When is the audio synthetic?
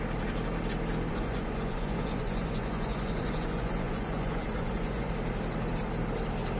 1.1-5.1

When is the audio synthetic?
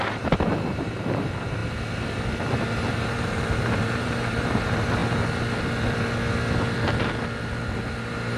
0.0-1.6; 2.9-5.0; 7.9-8.4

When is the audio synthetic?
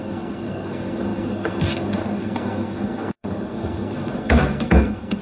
0.0-5.2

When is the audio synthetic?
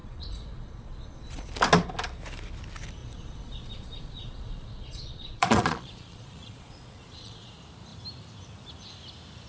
0.0-1.5; 3.0-7.5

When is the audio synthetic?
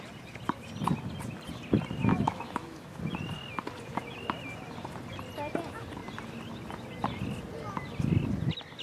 2.1-3.0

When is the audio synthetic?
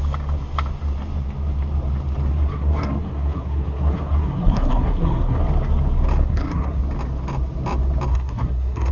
2.3-5.4; 6.2-6.8; 8.1-8.9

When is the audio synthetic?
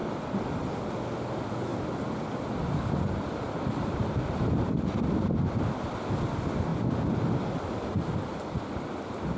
0.0-0.9; 1.7-6.1; 6.7-7.2